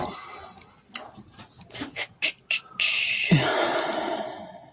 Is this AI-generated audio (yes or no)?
no